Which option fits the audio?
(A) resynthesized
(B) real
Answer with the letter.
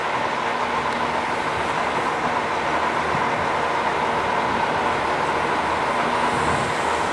B